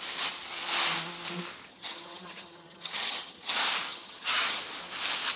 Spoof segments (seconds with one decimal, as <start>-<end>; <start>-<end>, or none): 1.7-3.5; 3.9-4.6